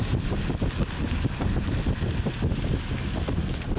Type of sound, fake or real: real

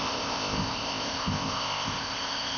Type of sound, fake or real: fake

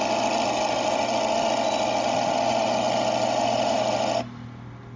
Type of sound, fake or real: real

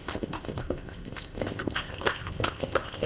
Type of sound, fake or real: fake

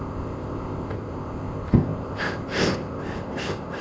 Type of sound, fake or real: fake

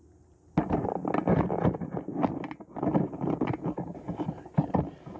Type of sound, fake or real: real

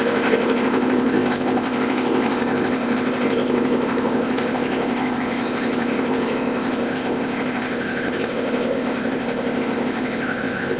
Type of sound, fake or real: fake